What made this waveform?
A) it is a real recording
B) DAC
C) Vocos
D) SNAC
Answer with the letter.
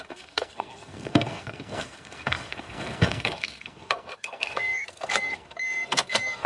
D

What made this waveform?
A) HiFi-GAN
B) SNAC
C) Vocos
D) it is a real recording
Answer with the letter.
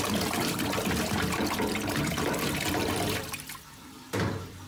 D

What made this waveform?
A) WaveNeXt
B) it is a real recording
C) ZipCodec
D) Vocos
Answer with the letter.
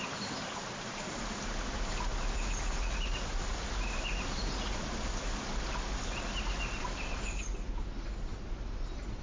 B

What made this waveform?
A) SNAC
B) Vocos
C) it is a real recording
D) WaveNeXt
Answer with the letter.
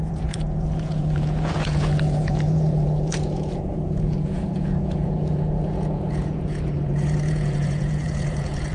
B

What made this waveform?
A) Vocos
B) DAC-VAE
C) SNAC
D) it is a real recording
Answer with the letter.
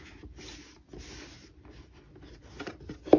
D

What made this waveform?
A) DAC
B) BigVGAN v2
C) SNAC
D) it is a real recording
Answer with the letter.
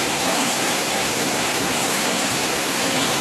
C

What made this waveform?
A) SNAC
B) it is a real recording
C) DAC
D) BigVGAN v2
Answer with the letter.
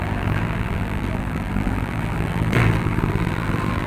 D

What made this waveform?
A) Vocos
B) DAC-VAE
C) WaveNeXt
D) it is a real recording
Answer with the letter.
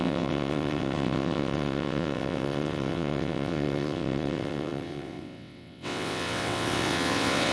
C